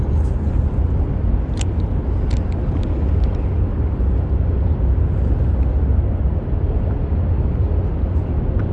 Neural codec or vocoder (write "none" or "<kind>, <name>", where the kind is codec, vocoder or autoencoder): none